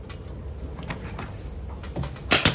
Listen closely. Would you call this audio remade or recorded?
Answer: recorded